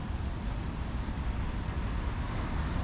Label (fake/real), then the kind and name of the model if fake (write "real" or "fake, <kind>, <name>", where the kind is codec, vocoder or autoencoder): real